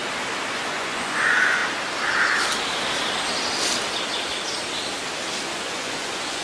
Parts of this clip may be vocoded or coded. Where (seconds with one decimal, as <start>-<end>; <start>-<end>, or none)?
0.5-1.6; 5.4-6.4